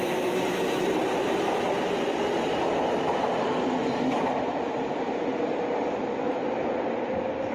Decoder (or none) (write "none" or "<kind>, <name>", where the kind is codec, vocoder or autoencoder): none